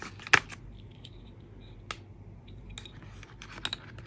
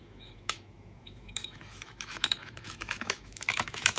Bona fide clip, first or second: first